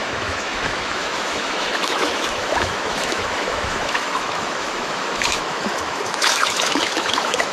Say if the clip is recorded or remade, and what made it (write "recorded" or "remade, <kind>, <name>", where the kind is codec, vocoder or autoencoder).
remade, autoencoder, DAC-VAE